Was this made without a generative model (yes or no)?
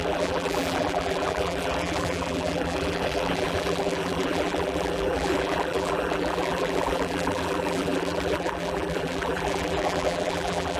no